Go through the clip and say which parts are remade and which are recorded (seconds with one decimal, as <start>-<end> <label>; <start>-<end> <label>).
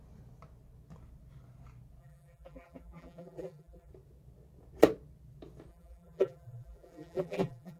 0.0-2.0 recorded; 2.0-3.9 remade; 3.9-5.7 recorded; 5.7-7.8 remade